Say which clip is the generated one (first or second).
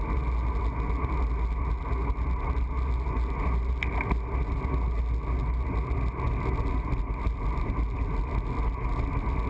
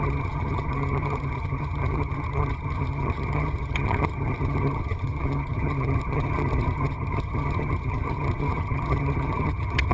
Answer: second